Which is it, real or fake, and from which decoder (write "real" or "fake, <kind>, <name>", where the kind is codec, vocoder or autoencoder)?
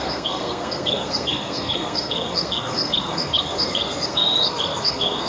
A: fake, codec, SNAC